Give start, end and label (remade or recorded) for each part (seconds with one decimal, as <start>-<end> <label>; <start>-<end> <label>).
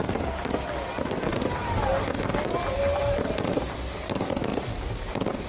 0.0-1.3 recorded; 1.3-1.9 remade; 1.9-3.0 recorded; 3.0-3.6 remade; 3.6-4.5 recorded; 4.5-5.5 remade